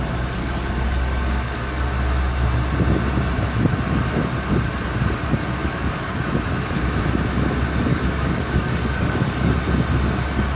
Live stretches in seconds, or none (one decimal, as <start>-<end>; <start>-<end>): 0.0-0.4; 1.8-5.6; 6.2-7.9; 9.5-10.6